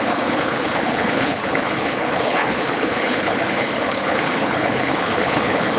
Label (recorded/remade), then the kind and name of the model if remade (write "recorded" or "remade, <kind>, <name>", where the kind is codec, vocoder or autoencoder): remade, codec, HILCodec